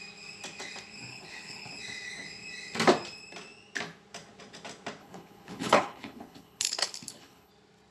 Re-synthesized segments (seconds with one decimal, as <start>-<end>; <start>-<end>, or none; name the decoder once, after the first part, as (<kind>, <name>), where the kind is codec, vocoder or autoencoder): 1.1-1.7 (codec, HILCodec); 5.0-7.5